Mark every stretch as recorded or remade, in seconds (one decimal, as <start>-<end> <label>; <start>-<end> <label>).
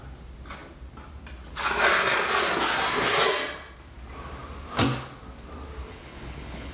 0.0-5.8 recorded; 5.8-6.7 remade